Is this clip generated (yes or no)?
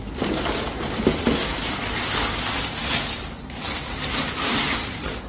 no